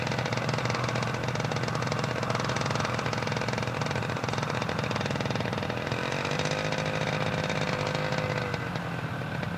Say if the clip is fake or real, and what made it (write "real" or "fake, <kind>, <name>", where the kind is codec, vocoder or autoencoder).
real